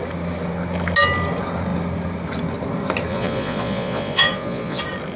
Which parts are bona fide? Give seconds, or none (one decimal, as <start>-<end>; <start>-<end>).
0.0-3.1; 4.8-5.2